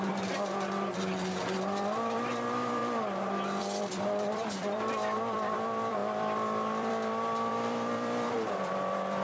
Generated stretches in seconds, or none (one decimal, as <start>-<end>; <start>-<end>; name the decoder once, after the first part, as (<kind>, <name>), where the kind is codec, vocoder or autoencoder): 0.0-2.8 (vocoder, BigVGAN v2); 3.6-9.2